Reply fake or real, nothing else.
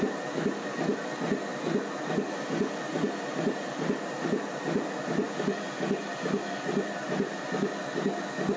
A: real